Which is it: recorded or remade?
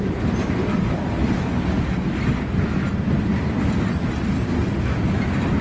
recorded